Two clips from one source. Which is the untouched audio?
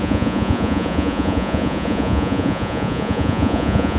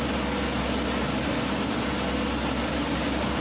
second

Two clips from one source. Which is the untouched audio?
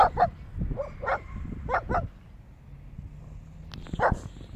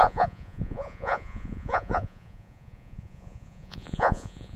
first